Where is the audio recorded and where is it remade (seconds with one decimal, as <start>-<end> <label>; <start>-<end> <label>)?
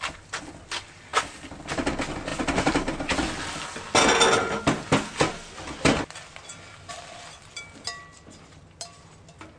0.0-9.6 recorded